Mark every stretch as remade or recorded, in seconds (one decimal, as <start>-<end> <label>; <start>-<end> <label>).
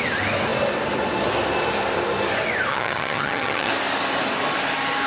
0.0-2.7 recorded; 2.7-3.7 remade; 3.7-5.1 recorded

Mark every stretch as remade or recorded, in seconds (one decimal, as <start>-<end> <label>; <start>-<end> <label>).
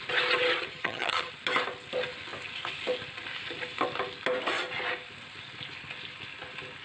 0.0-0.7 recorded; 0.7-1.3 remade; 1.3-6.8 recorded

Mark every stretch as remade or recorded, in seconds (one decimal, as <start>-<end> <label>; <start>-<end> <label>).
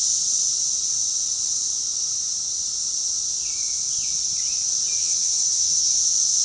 0.0-5.0 recorded; 5.0-5.9 remade; 5.9-6.4 recorded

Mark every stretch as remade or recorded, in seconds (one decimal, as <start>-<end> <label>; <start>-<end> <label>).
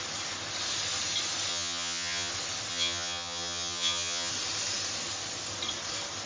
0.0-1.5 recorded; 1.5-2.3 remade; 2.3-2.7 recorded; 2.7-4.3 remade; 4.3-6.3 recorded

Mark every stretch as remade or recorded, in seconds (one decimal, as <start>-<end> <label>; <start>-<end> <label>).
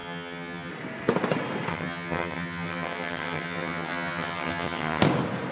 0.0-0.7 remade; 0.7-1.7 recorded; 1.7-5.0 remade; 5.0-5.5 recorded